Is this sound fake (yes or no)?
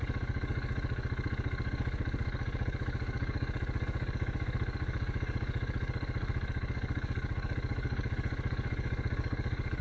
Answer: yes